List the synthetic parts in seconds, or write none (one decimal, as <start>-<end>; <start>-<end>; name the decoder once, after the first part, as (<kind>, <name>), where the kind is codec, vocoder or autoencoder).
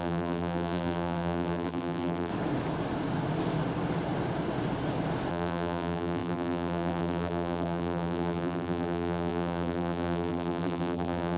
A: 0.0-2.3 (vocoder, BigVGAN v2); 5.3-11.4